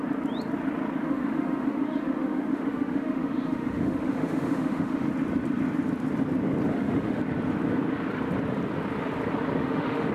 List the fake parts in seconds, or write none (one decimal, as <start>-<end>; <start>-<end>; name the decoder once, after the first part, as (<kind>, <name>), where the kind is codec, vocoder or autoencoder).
1.0-5.1 (autoencoder, DAC-VAE); 6.7-7.2; 9.6-10.1